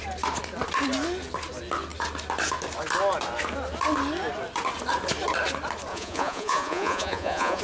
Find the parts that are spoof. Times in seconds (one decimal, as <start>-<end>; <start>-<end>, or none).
5.9-7.6